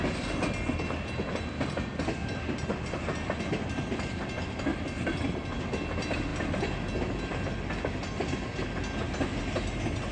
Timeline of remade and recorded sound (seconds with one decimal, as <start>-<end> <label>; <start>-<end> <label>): 0.0-10.1 recorded